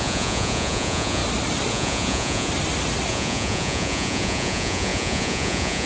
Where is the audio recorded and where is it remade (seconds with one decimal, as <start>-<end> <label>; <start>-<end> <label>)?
0.0-1.2 remade; 1.2-1.7 recorded; 1.7-2.5 remade; 2.5-3.1 recorded; 3.1-5.9 remade